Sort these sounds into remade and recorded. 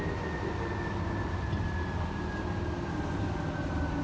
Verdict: recorded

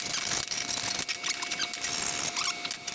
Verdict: recorded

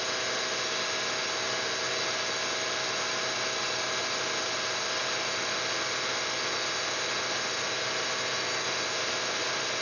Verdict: recorded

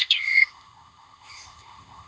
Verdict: remade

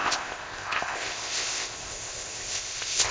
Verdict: remade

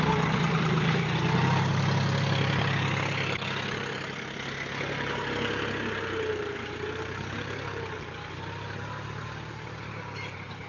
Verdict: recorded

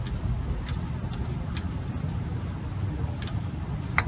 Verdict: recorded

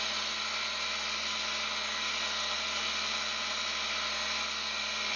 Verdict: recorded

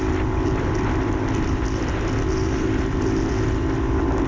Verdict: recorded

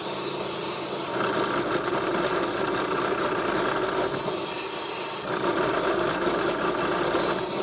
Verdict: recorded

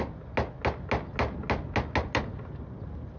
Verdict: recorded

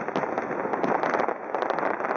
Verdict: recorded